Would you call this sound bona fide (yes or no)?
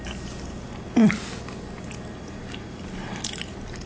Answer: yes